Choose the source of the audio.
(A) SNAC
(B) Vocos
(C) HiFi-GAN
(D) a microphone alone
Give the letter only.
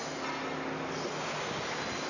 D